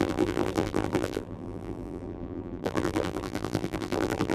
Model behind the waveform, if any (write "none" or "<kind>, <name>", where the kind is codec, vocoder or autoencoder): vocoder, BigVGAN v2